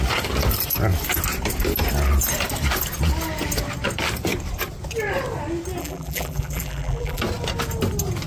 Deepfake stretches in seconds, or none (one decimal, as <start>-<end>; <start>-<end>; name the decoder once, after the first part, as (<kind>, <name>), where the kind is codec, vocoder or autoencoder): 5.8-7.2 (vocoder, BigVGAN v2)